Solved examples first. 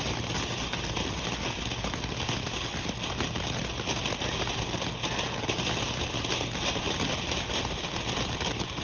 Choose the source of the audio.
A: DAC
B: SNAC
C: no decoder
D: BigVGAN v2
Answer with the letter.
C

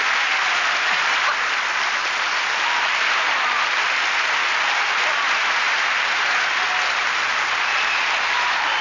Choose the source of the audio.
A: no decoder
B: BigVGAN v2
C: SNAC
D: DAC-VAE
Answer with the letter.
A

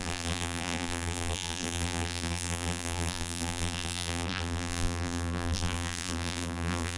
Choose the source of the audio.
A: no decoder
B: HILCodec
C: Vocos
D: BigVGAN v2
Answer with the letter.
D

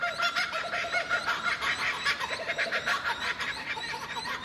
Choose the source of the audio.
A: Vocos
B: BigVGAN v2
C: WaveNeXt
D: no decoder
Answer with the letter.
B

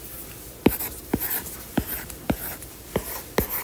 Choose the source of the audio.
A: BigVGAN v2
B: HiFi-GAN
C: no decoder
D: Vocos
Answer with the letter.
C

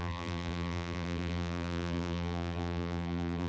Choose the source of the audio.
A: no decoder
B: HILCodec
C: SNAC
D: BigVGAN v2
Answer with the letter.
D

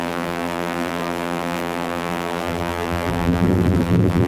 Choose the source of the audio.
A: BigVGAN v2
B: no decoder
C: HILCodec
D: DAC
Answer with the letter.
A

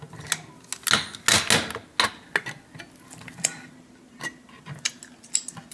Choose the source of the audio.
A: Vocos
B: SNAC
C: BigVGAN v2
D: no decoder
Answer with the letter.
D